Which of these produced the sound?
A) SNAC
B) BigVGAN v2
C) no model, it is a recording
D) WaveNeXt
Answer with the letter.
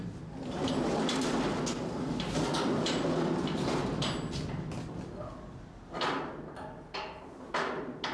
C